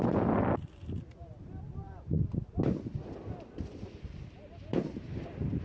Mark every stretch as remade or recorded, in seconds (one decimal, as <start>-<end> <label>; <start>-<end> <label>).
0.0-5.6 recorded